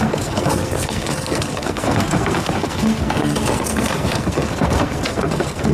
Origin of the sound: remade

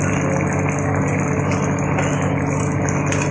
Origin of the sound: recorded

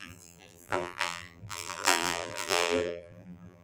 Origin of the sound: remade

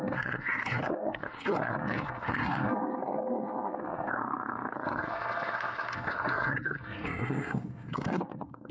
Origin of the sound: remade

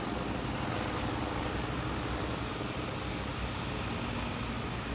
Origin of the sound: recorded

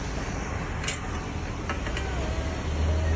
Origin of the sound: recorded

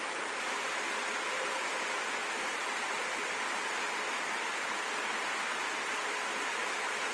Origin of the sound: recorded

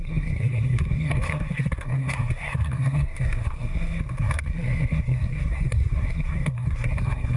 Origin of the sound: remade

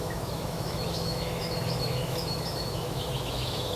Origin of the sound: remade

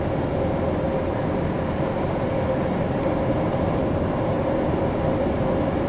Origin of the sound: recorded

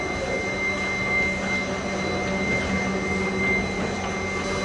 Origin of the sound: recorded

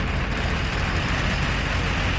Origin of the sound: recorded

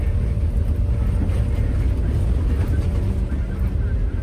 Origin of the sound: recorded